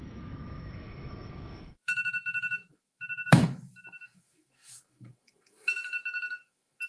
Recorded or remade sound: remade